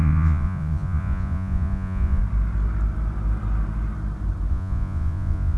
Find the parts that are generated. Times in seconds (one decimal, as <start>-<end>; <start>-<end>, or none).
0.0-2.2; 4.5-5.6